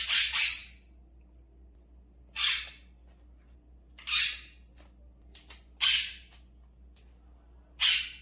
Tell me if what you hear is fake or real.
real